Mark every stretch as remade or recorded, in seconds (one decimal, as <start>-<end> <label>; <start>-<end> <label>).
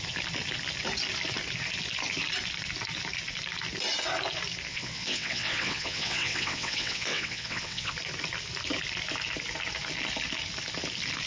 0.0-4.7 recorded; 4.7-7.9 remade; 7.9-11.3 recorded